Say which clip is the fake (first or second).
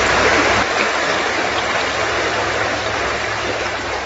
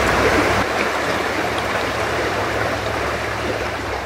second